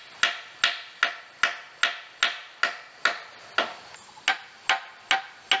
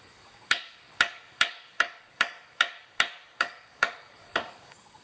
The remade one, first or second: second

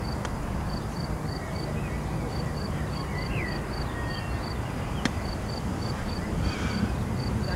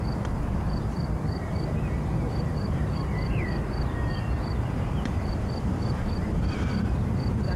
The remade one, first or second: second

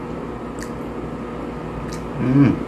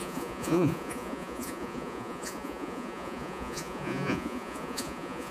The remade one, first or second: second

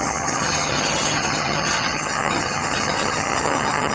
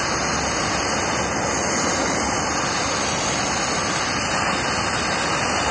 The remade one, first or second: first